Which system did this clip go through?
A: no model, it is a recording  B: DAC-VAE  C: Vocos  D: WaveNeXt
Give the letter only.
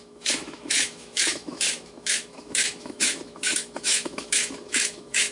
B